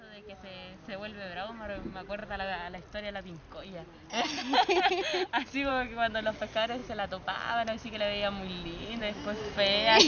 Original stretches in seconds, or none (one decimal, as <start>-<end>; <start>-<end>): 0.0-10.1